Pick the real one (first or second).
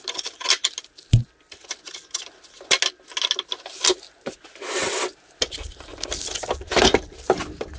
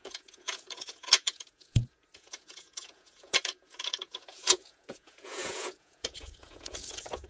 first